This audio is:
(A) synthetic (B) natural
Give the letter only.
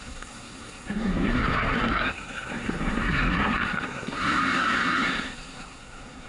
A